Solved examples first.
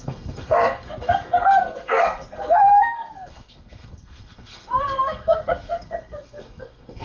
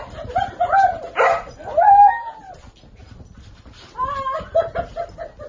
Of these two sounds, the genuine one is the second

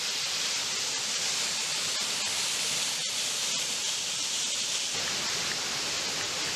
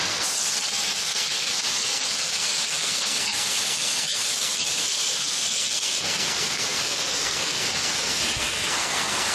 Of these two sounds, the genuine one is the first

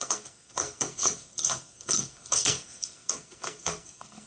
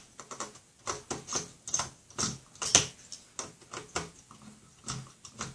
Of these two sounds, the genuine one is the second